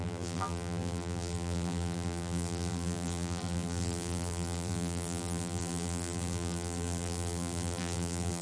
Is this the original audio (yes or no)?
no